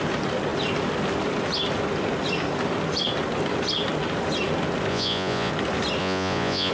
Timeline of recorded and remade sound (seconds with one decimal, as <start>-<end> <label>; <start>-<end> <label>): 0.0-4.9 recorded; 4.9-5.5 remade; 5.5-6.0 recorded; 6.0-6.7 remade